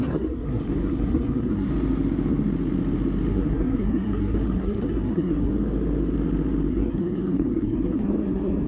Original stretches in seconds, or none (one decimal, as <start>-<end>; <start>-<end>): 1.7-3.3; 5.5-6.7